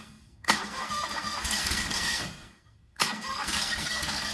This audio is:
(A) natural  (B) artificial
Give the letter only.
B